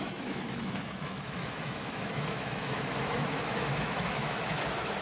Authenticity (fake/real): fake